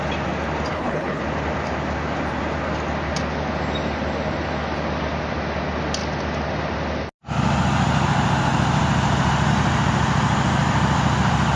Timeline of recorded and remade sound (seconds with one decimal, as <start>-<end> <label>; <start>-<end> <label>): 0.0-0.7 recorded; 0.7-1.2 remade; 1.2-11.6 recorded

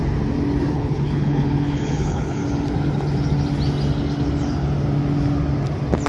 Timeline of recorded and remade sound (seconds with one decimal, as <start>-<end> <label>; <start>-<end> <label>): 0.0-0.7 recorded; 0.7-2.4 remade; 2.4-6.1 recorded